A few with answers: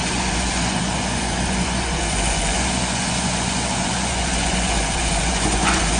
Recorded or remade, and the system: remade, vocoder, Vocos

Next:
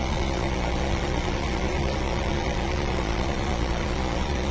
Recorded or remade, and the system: remade, vocoder, Vocos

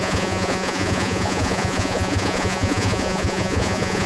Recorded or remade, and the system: remade, vocoder, Vocos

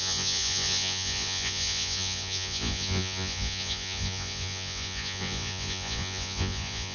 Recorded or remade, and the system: remade, vocoder, Vocos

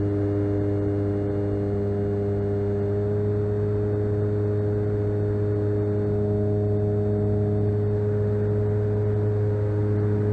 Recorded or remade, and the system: recorded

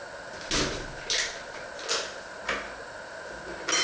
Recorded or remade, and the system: recorded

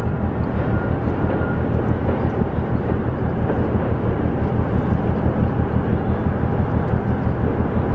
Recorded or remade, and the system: recorded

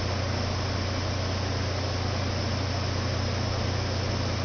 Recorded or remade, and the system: recorded